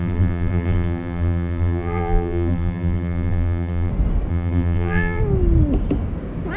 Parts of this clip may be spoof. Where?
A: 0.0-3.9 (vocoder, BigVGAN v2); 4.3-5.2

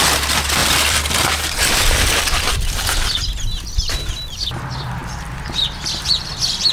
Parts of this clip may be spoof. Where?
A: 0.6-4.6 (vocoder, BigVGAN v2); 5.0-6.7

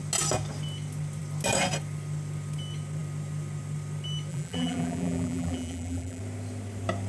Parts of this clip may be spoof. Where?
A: 4.3-6.2 (vocoder, BigVGAN v2)

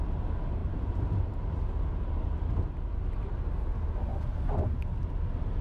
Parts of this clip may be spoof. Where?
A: 0.6-3.3 (vocoder, BigVGAN v2)

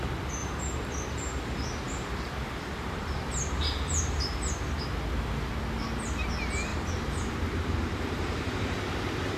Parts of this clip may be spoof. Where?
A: 0.4-4.5 (vocoder, BigVGAN v2); 6.7-8.8

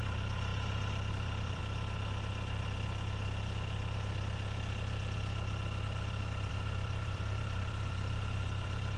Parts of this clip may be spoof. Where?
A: 0.0-0.5 (vocoder, BigVGAN v2); 1.1-1.6; 6.5-9.0

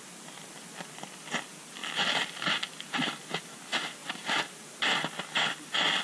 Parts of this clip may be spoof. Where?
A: 1.8-3.6 (vocoder, BigVGAN v2)